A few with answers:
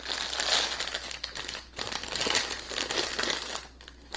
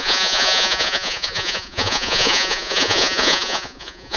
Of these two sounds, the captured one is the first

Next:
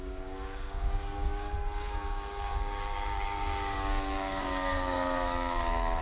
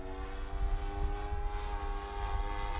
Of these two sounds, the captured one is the second